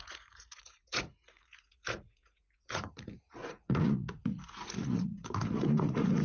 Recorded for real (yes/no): no